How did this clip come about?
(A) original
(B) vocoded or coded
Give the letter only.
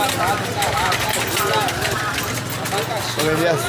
A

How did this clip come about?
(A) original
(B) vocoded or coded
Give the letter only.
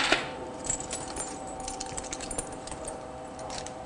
B